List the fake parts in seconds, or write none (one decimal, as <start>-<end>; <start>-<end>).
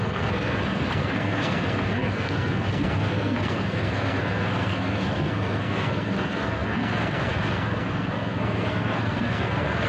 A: 0.0-9.9